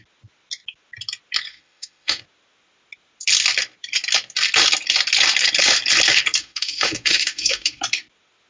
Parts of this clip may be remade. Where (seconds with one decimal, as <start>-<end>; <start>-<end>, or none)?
1.5-2.2; 6.4-7.8